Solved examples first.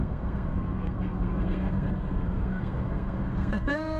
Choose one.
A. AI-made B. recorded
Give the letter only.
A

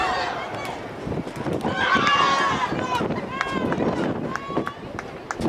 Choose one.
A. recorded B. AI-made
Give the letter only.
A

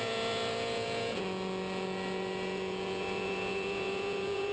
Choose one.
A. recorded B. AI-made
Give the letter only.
B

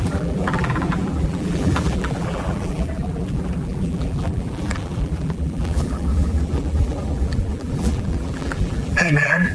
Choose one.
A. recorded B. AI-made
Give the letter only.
B